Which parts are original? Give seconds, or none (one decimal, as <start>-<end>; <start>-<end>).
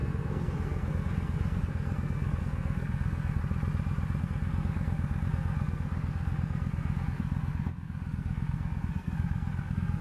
3.4-4.2